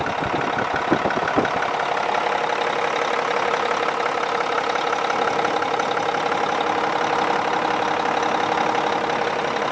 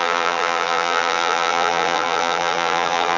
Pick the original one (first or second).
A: first